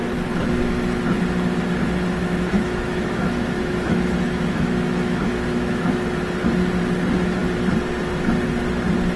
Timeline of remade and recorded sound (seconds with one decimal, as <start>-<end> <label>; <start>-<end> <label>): 0.0-2.2 recorded; 2.2-5.9 remade; 5.9-9.2 recorded